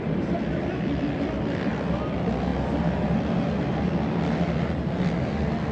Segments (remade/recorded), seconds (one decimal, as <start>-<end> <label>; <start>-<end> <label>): 0.0-5.7 recorded